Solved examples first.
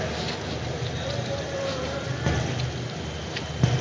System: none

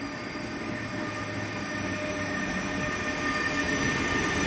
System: none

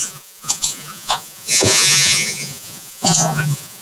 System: vocoder, Vocos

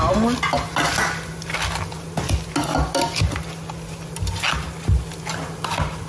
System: none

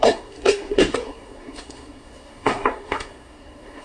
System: codec, SNAC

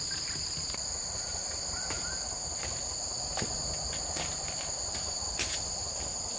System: none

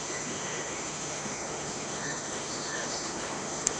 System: autoencoder, DAC-VAE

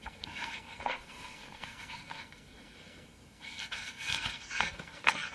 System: codec, SNAC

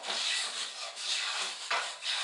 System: codec, DAC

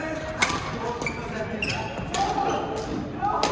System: none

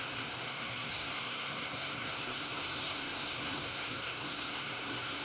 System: codec, SNAC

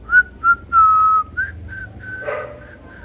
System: none